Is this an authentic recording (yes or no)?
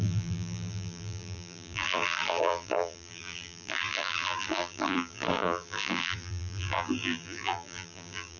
no